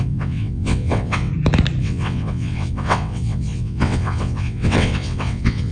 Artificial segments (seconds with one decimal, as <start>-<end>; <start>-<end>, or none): 0.0-1.3; 1.8-5.7